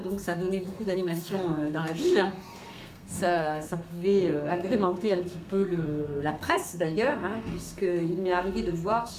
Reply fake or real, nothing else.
fake